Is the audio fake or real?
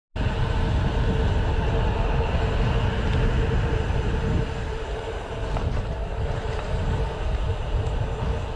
real